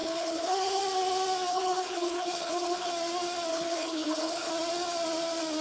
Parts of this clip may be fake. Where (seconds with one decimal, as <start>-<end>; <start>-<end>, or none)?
0.0-0.8; 1.5-2.9; 3.5-4.5